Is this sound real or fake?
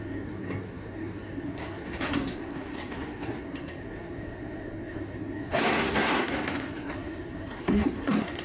fake